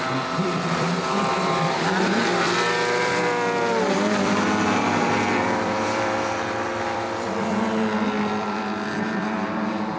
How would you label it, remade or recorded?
remade